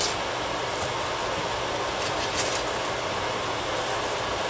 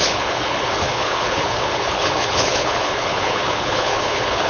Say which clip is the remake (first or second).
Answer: second